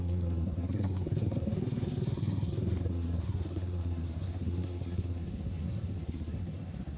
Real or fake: fake